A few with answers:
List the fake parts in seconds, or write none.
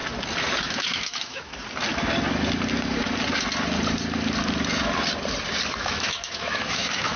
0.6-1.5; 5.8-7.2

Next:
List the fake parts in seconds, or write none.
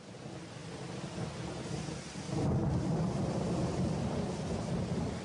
none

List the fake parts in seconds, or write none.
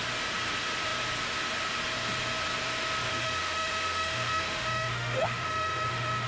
3.1-6.3